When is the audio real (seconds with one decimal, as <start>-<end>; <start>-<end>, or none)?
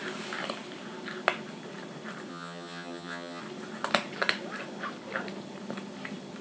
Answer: 0.0-2.3; 3.4-6.4